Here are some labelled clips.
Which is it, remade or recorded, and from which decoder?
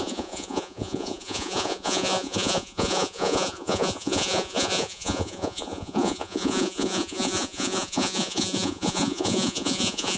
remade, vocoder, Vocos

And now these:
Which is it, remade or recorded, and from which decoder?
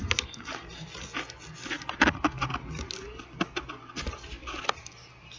recorded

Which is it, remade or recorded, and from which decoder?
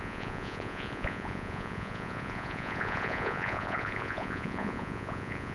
remade, vocoder, Vocos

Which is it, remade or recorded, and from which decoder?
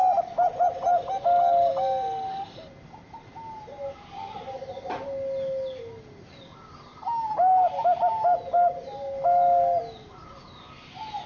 recorded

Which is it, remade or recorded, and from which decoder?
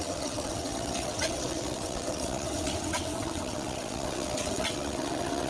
remade, vocoder, WaveNeXt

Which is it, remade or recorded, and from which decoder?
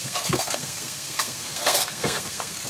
remade, codec, SNAC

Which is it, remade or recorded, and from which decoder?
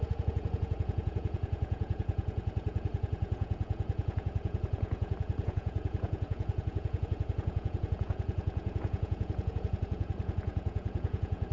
remade, vocoder, Vocos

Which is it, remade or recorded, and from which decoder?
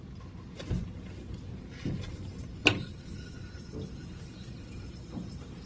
recorded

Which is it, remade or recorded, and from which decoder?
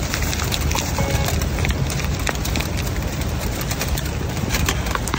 recorded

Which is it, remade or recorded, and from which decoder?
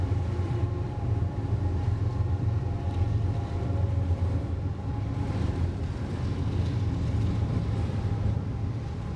remade, vocoder, BigVGAN v2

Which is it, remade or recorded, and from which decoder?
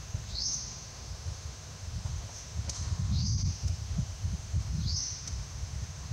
remade, autoencoder, DAC-VAE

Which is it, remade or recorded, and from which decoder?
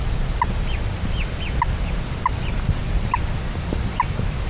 recorded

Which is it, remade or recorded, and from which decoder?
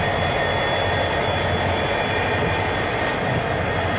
recorded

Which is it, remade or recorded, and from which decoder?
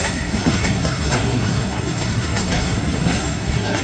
remade, codec, SNAC